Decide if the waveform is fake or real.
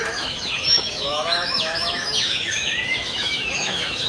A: fake